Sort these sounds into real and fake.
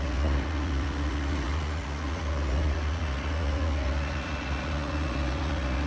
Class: fake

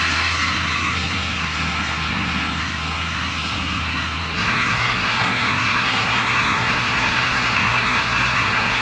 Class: fake